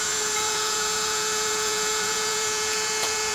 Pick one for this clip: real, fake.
fake